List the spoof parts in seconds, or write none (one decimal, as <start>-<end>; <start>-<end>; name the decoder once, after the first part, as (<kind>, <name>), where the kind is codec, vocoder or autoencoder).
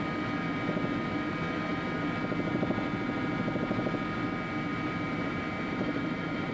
4.7-6.5 (vocoder, BigVGAN v2)